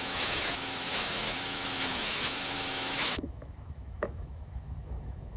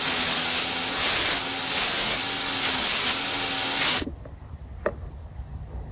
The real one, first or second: second